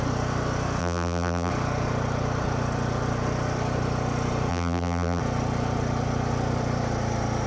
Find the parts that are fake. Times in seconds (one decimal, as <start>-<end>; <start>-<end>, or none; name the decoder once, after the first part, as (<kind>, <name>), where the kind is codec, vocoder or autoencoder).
0.8-1.5 (vocoder, BigVGAN v2); 4.5-5.2